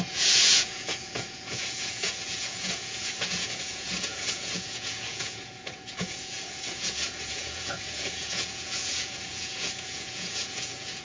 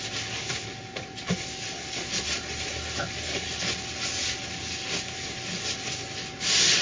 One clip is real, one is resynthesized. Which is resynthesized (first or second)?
first